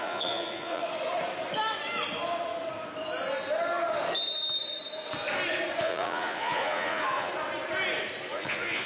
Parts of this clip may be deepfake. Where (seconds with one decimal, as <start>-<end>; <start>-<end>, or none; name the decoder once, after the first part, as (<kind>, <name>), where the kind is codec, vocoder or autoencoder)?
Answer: 0.0-0.8 (vocoder, Vocos); 5.8-7.3; 8.3-8.9